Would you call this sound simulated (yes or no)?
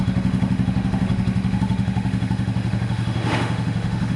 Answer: yes